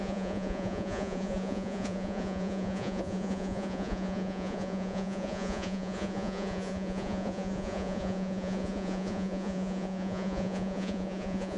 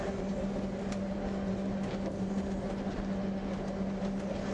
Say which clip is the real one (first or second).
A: second